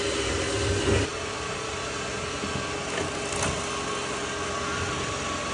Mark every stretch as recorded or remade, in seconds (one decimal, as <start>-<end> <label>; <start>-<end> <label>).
0.0-5.5 recorded